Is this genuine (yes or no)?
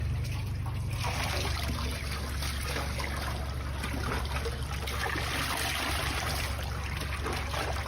yes